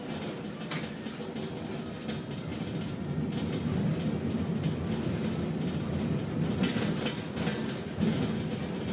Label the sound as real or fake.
real